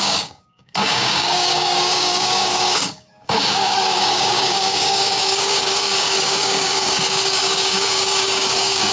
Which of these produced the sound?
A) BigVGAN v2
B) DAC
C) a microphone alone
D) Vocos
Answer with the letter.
B